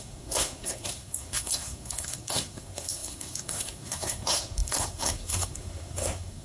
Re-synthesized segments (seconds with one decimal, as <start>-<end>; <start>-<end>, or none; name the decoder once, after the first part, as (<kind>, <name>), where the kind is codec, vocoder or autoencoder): 0.0-6.4 (codec, SNAC)